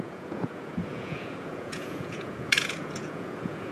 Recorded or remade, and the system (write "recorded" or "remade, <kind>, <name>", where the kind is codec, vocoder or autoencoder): remade, vocoder, Vocos